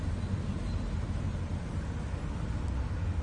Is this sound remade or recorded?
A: recorded